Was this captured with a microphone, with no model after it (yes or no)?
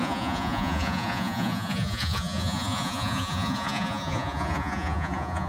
no